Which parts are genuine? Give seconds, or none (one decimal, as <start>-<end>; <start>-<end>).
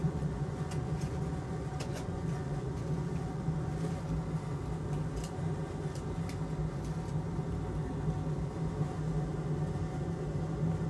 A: 3.7-10.9